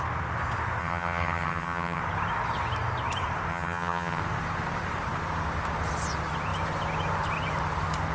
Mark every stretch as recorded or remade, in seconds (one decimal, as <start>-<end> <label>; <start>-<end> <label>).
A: 0.0-0.8 recorded; 0.8-2.0 remade; 2.0-3.5 recorded; 3.5-4.2 remade; 4.2-8.1 recorded